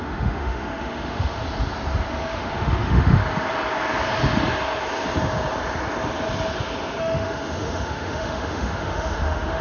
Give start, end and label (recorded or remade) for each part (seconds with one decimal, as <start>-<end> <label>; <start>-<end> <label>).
0.0-1.4 remade; 1.4-2.1 recorded; 2.1-3.2 remade; 3.2-7.0 recorded; 7.0-9.6 remade